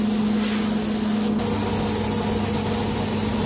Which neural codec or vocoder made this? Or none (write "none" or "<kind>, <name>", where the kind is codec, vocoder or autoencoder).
none